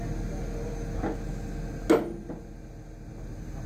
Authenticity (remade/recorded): recorded